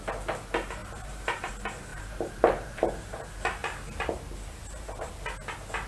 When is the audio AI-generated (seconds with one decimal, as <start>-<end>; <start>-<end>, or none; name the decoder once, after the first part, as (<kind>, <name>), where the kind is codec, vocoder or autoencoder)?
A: 0.8-1.5 (vocoder, BigVGAN v2); 1.9-3.2; 4.6-5.1